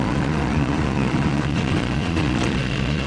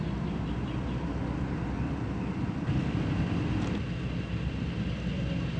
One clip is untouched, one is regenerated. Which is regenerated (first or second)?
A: first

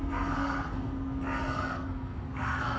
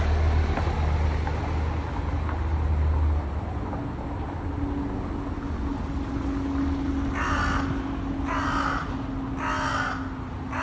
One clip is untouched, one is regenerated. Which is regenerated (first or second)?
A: first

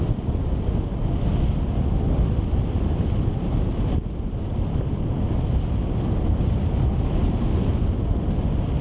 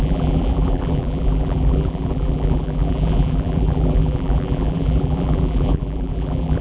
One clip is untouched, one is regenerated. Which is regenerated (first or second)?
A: second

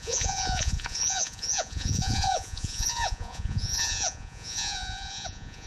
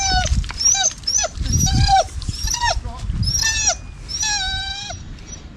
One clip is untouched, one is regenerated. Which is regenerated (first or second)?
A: first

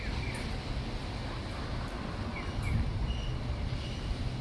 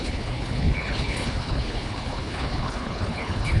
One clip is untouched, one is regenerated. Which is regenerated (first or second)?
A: second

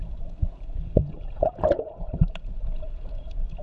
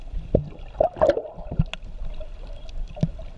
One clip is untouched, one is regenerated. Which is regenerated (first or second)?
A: first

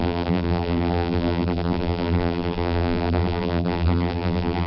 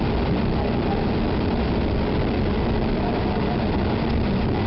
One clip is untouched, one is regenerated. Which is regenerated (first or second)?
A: first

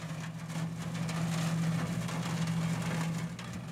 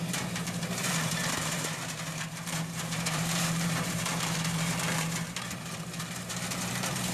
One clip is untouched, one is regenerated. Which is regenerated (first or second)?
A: second